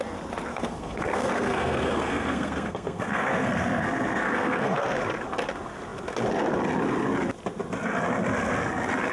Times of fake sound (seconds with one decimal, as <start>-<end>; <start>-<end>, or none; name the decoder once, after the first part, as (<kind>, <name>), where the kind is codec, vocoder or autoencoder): 0.5-5.0 (codec, SNAC)